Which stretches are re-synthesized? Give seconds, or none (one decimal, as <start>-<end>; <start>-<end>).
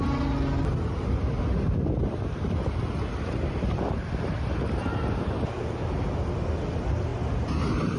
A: none